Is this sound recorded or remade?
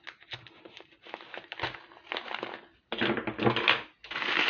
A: recorded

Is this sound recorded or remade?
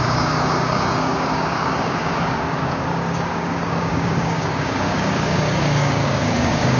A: remade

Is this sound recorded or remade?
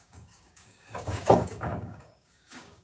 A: remade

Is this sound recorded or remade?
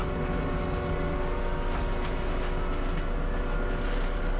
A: recorded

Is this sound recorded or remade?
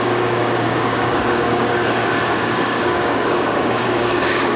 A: remade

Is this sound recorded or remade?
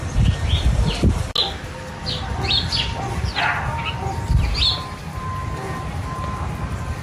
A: recorded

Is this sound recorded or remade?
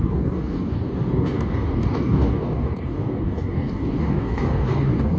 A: remade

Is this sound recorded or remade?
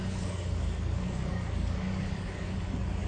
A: remade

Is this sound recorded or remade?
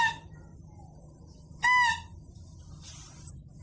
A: recorded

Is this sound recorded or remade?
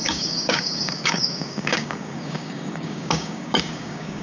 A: remade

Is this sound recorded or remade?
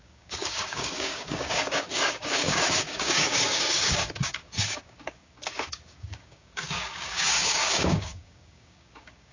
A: remade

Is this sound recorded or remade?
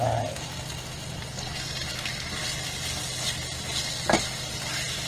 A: recorded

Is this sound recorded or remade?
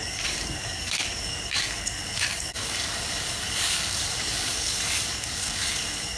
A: remade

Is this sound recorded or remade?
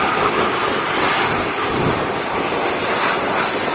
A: recorded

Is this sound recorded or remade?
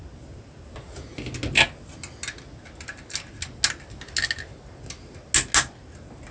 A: recorded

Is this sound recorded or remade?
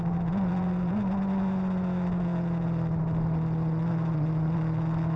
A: recorded